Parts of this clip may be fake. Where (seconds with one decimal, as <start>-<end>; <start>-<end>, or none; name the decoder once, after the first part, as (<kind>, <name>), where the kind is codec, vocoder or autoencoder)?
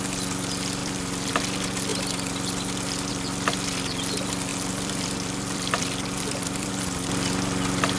0.8-1.3 (vocoder, BigVGAN v2); 4.5-6.7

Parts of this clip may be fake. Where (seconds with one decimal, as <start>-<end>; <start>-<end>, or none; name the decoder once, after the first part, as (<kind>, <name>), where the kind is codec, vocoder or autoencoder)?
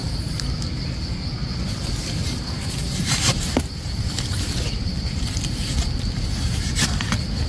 0.0-0.8 (vocoder, BigVGAN v2); 2.2-6.7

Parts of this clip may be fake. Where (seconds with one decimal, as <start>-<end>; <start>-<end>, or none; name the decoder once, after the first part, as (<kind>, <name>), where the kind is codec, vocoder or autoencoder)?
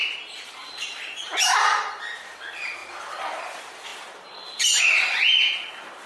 1.3-2.4 (vocoder, BigVGAN v2); 2.8-3.4